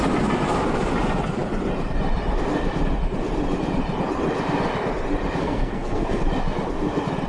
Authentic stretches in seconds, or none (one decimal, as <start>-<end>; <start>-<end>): 0.0-5.4; 6.2-7.3